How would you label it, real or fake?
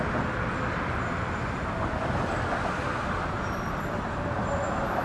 real